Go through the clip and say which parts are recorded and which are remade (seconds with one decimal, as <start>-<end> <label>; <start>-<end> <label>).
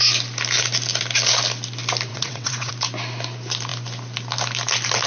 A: 0.0-2.1 recorded; 2.1-2.7 remade; 2.7-5.1 recorded